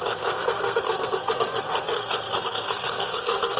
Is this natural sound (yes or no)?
no